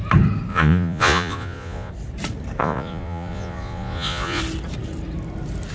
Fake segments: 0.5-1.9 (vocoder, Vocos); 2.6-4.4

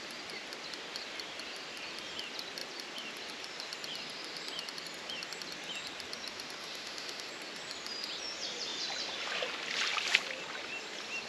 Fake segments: 6.6-7.3 (autoencoder, DAC-VAE)